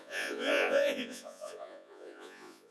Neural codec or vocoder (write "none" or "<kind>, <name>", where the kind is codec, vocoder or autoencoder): vocoder, Vocos